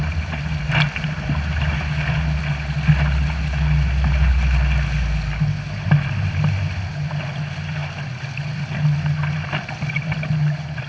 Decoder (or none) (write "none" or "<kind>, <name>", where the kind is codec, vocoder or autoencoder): none